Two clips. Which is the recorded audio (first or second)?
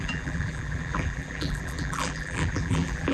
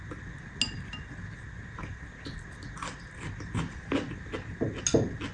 second